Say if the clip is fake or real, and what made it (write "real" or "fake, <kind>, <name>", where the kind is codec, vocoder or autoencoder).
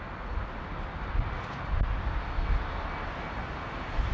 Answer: real